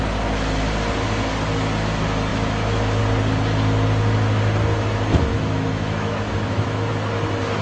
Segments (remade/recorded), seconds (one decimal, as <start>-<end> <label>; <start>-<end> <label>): 0.0-2.3 recorded; 2.3-3.0 remade; 3.0-5.3 recorded; 5.3-6.9 remade; 6.9-7.6 recorded